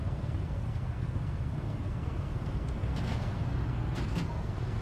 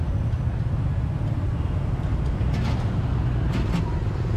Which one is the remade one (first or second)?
first